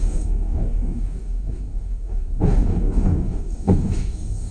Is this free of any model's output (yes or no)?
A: no